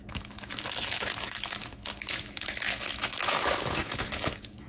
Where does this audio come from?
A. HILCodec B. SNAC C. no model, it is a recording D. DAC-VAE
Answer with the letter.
D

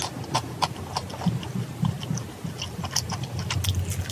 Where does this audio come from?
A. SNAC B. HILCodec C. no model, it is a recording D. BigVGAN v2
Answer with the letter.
C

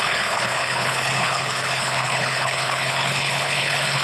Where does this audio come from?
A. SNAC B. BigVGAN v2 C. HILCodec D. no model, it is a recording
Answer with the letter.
C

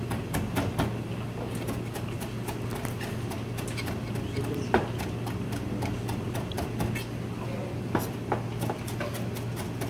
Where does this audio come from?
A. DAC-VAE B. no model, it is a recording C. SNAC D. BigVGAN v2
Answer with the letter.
B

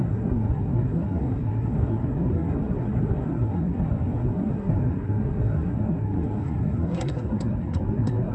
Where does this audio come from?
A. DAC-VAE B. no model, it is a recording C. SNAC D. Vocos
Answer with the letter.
C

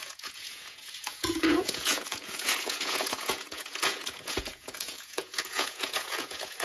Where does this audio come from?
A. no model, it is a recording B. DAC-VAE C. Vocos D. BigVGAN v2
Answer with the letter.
C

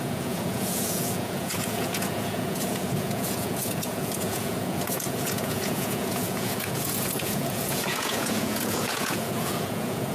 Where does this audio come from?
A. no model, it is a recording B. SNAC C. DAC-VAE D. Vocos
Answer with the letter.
D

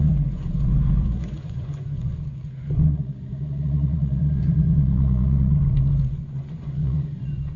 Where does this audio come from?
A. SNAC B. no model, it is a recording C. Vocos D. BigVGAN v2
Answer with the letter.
C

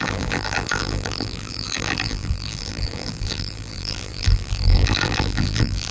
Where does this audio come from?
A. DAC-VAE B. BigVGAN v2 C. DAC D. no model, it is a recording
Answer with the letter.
B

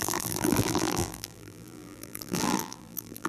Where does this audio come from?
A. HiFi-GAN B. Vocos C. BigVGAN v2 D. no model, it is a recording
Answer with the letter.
C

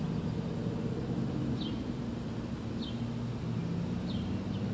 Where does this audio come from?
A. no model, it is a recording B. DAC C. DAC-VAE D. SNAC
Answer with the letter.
A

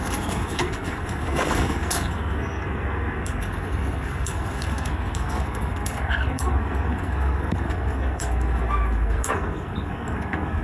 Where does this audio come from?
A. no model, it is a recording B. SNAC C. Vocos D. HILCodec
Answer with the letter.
B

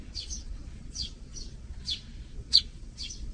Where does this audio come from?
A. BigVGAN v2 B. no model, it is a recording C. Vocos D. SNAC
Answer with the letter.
C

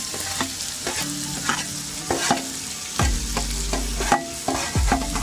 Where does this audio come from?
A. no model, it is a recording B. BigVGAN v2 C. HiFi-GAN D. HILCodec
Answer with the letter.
A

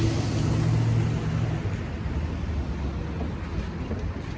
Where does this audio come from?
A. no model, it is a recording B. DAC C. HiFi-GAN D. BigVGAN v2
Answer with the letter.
A